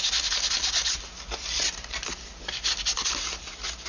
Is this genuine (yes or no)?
yes